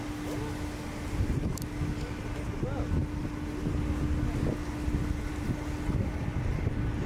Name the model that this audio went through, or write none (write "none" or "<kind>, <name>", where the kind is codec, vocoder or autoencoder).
none